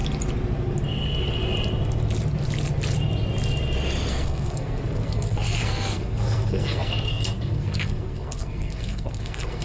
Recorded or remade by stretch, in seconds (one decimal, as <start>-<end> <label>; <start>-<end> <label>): 0.0-4.1 recorded; 4.1-9.6 remade

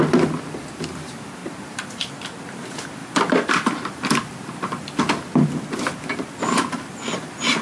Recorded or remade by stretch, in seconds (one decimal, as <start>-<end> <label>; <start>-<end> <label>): 0.0-1.4 recorded; 1.4-2.1 remade; 2.1-3.0 recorded; 3.0-5.0 remade; 5.0-7.6 recorded